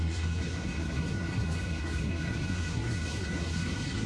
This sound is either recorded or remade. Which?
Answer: remade